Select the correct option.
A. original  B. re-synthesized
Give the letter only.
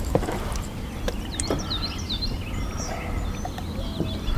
B